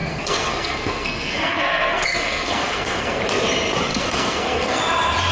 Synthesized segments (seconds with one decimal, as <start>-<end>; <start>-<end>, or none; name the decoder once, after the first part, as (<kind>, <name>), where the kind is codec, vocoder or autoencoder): 0.0-3.2 (codec, SNAC); 3.9-4.8